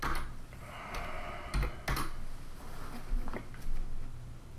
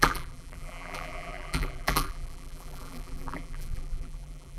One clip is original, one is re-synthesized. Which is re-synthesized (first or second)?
second